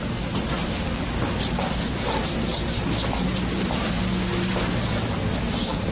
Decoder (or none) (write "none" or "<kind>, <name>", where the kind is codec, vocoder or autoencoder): none